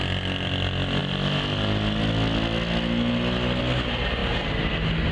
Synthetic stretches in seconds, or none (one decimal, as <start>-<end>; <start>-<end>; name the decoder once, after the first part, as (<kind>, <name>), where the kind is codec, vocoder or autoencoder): none